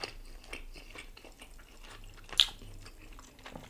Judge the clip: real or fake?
real